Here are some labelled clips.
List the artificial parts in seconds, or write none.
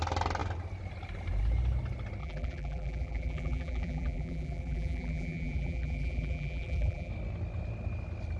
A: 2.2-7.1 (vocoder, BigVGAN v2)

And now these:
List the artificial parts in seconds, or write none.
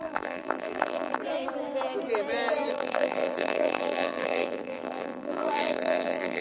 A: 0.0-1.2 (vocoder, BigVGAN v2); 2.7-6.4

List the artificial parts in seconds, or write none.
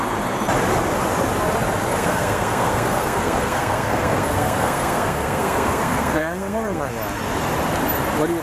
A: 1.9-6.9 (codec, SNAC)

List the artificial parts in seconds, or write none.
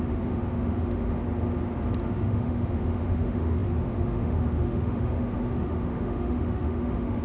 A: 0.0-1.2 (autoencoder, DAC-VAE); 2.0-7.2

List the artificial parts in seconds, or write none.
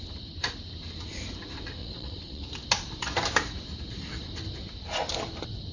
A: 1.8-2.4 (vocoder, WaveNeXt)